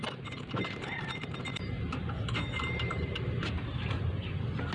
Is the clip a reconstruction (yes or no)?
yes